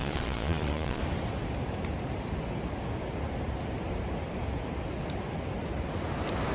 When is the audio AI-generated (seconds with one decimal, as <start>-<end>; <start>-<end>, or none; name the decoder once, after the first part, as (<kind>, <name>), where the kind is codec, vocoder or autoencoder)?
0.0-1.0 (vocoder, Vocos)